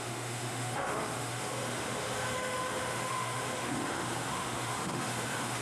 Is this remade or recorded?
remade